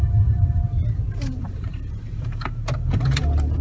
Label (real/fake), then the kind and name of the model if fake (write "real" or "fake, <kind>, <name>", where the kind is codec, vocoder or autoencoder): fake, vocoder, BigVGAN v2